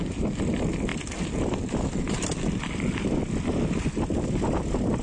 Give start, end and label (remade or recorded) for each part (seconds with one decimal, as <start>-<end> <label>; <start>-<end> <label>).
0.0-5.0 recorded